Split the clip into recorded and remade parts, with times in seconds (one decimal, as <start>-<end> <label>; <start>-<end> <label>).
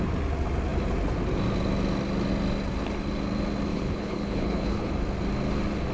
0.0-3.7 recorded; 3.7-4.9 remade; 4.9-5.9 recorded